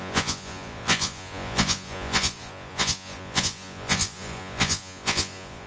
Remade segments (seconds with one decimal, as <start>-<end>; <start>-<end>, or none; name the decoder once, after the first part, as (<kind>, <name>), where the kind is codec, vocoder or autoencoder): 0.0-5.7 (vocoder, Vocos)